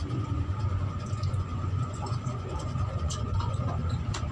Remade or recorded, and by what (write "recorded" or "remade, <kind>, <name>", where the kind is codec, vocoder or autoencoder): remade, vocoder, Vocos